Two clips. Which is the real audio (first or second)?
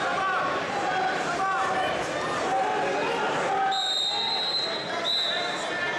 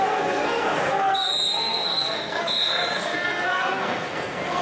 first